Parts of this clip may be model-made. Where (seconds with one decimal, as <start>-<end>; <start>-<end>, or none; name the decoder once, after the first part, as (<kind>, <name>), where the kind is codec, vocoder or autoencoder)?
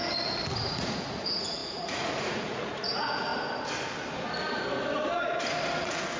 0.6-3.3 (vocoder, Vocos); 5.8-6.2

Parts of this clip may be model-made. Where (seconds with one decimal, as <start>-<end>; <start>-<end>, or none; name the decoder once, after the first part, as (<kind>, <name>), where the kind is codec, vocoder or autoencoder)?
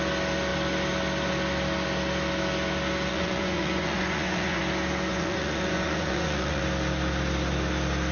3.1-4.6 (vocoder, Vocos); 5.1-6.6